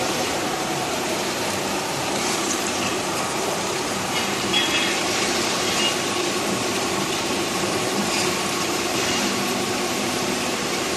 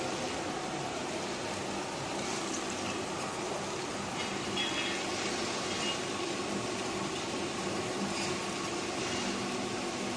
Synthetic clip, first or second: first